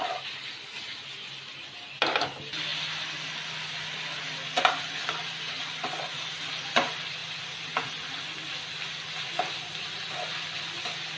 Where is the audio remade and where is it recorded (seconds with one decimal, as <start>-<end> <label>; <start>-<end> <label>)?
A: 0.0-11.2 recorded

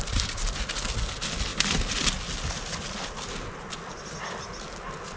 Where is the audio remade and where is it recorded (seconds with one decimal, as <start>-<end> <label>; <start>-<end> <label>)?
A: 0.0-5.2 recorded

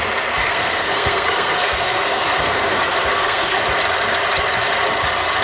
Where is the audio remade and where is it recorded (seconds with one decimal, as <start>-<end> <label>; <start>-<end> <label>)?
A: 0.0-0.4 recorded; 0.4-3.6 remade; 3.6-5.4 recorded

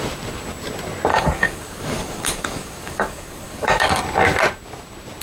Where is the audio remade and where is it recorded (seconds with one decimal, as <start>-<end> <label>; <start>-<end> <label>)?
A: 0.0-1.1 recorded; 1.1-4.0 remade; 4.0-5.2 recorded

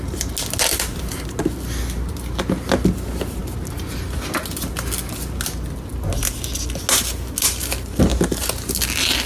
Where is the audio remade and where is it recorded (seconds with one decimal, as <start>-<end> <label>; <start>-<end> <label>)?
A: 0.0-9.3 recorded

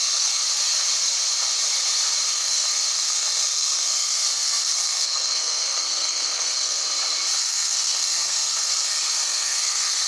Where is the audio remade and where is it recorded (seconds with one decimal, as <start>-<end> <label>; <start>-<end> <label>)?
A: 0.0-0.4 remade; 0.4-2.3 recorded; 2.3-6.8 remade; 6.8-7.4 recorded; 7.4-10.1 remade

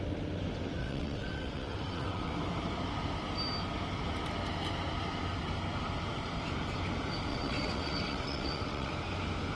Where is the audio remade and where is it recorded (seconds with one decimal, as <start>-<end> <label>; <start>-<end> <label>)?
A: 0.0-0.8 recorded; 0.8-2.3 remade; 2.3-7.3 recorded; 7.3-8.9 remade; 8.9-9.6 recorded

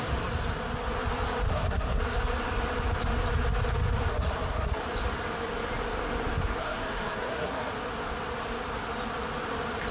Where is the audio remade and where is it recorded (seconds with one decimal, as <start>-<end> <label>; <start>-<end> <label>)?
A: 0.0-1.5 recorded; 1.5-2.0 remade; 2.0-4.1 recorded; 4.1-4.8 remade; 4.8-6.6 recorded; 6.6-7.7 remade; 7.7-9.9 recorded